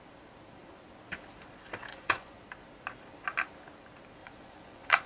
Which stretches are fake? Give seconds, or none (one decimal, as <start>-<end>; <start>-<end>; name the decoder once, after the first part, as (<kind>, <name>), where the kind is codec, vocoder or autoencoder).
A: 1.9-2.4 (vocoder, Vocos); 4.2-5.1